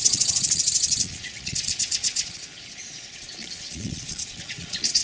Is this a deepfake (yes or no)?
yes